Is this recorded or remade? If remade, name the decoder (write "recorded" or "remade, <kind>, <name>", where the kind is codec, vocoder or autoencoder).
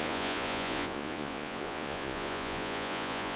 remade, vocoder, Vocos